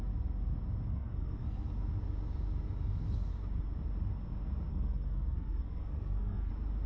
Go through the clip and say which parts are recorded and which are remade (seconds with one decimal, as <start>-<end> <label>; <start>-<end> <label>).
0.0-0.9 recorded; 0.9-1.7 remade; 1.7-4.7 recorded; 4.7-6.5 remade; 6.5-6.9 recorded